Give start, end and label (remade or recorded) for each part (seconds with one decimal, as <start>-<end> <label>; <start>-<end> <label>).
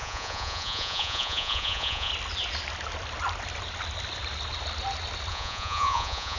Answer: 0.0-2.1 remade; 2.1-5.3 recorded; 5.3-6.4 remade